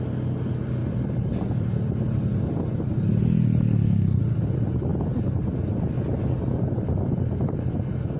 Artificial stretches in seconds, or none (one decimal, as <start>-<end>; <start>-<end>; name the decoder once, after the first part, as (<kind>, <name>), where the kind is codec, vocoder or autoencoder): 3.7-4.2 (codec, SNAC)